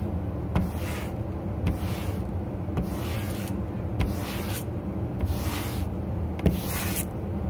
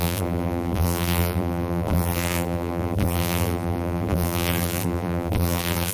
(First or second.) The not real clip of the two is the second